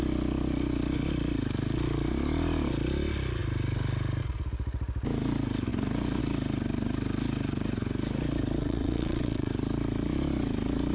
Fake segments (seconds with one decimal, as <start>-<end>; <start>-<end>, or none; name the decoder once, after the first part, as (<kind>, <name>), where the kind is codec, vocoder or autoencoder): 8.6-9.5 (vocoder, WaveNeXt)